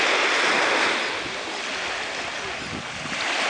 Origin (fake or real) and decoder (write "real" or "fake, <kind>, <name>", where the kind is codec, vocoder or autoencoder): real